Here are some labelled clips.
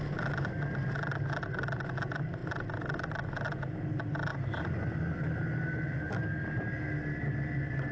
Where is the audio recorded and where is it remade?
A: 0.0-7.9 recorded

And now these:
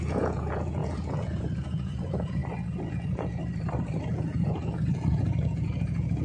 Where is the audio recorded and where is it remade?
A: 0.0-2.4 remade; 2.4-2.9 recorded; 2.9-3.4 remade; 3.4-4.1 recorded; 4.1-6.2 remade

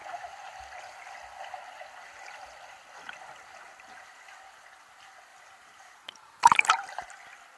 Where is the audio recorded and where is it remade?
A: 0.0-5.3 recorded; 5.3-7.1 remade; 7.1-7.6 recorded

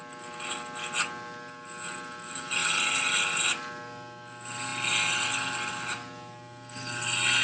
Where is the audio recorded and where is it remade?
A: 0.0-7.4 recorded